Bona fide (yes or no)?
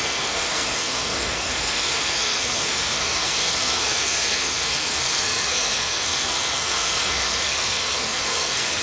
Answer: no